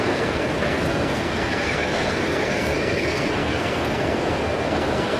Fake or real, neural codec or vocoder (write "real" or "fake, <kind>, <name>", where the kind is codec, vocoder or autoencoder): fake, codec, SNAC